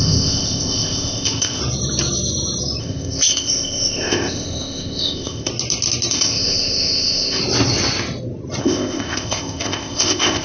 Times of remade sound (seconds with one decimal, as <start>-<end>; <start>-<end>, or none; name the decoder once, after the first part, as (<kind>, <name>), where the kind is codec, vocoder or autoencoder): 0.0-1.6 (codec, ZipCodec); 2.8-5.5; 6.1-7.4; 8.6-10.4